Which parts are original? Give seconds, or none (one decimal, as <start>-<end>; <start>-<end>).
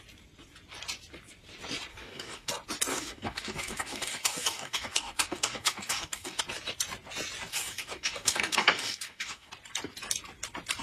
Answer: 0.0-1.9; 2.5-2.9; 6.4-7.5; 9.5-10.8